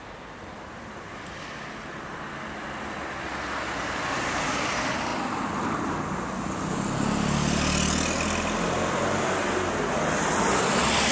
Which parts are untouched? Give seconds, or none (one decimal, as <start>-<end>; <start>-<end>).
5.1-9.9